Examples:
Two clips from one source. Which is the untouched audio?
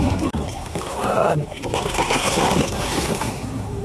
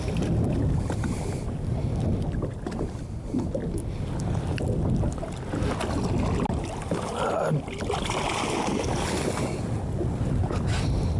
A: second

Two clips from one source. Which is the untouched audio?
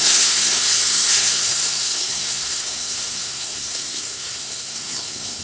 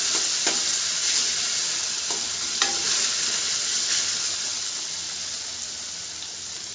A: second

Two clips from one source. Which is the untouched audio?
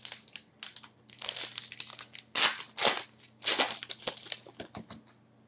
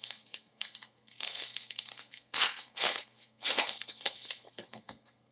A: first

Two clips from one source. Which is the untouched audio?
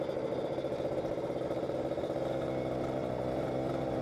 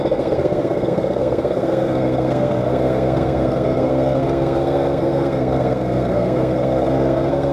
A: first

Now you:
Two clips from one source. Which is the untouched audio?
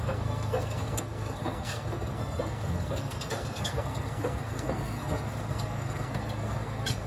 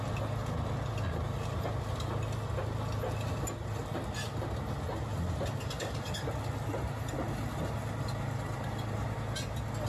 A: second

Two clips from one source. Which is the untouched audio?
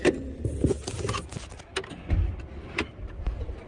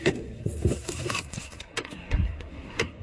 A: first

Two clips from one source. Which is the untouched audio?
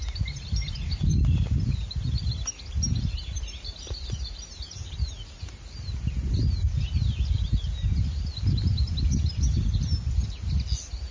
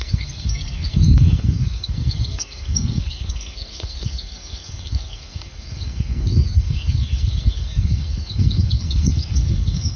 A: first